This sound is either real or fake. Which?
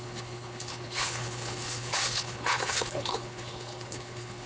fake